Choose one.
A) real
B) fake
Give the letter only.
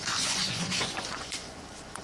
B